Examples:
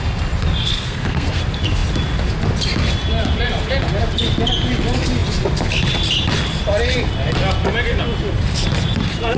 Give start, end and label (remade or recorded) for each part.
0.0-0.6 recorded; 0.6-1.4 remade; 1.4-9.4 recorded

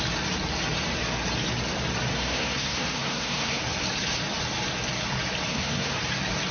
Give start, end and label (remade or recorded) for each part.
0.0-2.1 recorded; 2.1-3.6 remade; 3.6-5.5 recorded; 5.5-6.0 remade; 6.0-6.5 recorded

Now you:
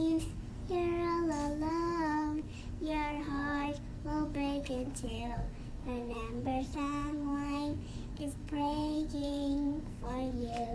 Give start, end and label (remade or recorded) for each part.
0.0-0.6 remade; 0.6-1.7 recorded; 1.7-10.7 remade